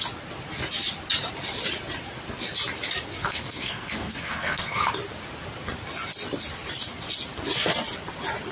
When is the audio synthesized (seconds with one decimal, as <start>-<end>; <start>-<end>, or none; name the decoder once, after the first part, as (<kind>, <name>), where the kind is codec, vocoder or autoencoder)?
3.2-4.9 (codec, SNAC)